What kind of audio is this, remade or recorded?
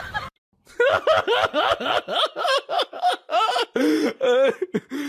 remade